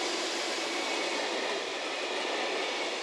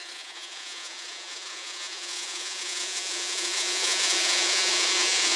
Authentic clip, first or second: first